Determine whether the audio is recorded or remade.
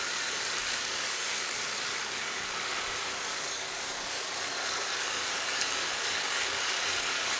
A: remade